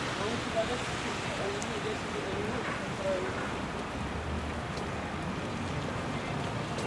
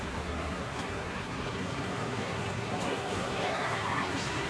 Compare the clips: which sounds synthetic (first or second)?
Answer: second